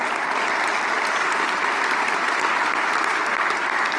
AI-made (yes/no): yes